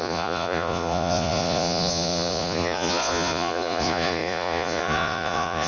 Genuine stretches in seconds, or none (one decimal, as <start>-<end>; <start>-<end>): none